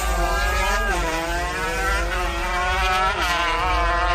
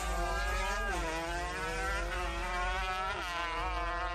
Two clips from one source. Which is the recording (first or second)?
second